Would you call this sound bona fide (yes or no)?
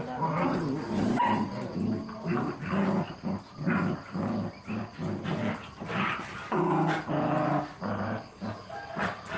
yes